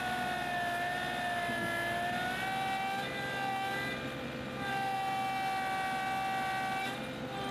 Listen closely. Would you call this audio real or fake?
real